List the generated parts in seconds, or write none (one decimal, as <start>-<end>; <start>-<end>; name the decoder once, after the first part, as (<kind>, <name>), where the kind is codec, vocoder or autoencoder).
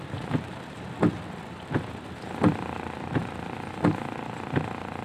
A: 3.2-3.8 (vocoder, BigVGAN v2)